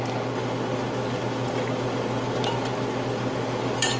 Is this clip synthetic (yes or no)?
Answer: no